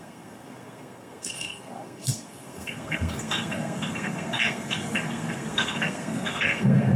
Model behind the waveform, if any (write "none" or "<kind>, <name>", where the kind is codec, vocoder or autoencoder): codec, SNAC